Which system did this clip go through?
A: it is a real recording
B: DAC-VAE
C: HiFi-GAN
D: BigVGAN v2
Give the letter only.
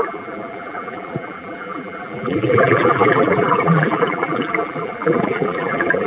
D